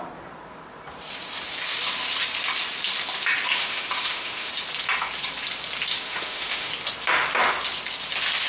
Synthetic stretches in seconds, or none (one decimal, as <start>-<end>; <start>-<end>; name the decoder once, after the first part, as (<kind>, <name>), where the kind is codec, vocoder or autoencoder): 3.5-4.5 (autoencoder, DAC-VAE); 5.9-6.7